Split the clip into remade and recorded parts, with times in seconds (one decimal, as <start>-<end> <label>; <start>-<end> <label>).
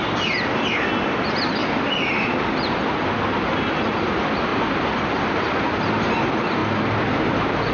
0.0-7.7 recorded